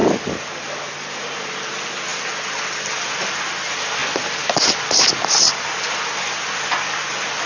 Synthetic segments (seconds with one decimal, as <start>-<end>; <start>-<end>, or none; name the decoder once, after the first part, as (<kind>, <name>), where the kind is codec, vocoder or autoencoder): none